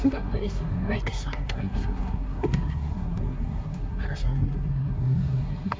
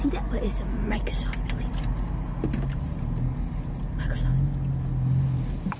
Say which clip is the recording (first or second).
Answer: second